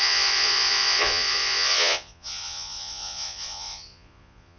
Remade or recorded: remade